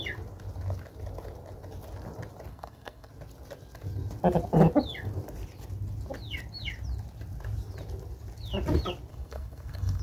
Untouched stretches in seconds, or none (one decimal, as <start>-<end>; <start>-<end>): 0.0-2.5; 3.1-9.1